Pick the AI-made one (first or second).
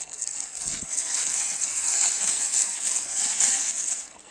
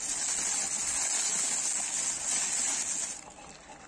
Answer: first